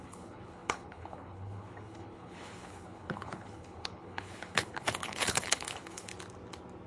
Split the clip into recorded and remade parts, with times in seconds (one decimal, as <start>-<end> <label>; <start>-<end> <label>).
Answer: 0.0-6.1 remade; 6.1-6.9 recorded

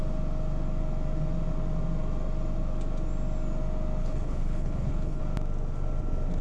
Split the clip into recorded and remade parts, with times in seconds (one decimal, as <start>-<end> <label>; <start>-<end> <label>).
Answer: 0.0-4.0 recorded; 4.0-5.2 remade; 5.2-6.4 recorded

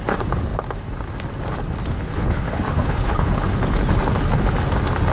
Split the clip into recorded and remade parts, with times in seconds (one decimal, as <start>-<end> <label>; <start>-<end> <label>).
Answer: 0.0-1.9 recorded; 1.9-3.3 remade; 3.3-5.1 recorded